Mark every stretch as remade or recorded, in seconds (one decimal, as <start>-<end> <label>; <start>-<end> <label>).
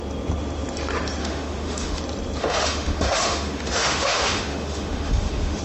0.0-1.2 recorded; 1.2-2.0 remade; 2.0-2.4 recorded; 2.4-5.6 remade